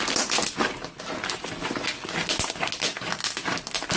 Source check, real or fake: real